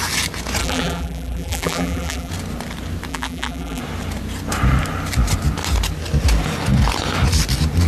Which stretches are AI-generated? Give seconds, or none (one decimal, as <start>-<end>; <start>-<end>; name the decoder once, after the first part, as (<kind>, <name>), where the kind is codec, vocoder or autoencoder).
0.6-2.3 (vocoder, BigVGAN v2); 3.1-3.8